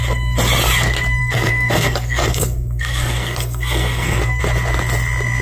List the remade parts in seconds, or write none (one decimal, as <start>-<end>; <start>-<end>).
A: 1.2-4.4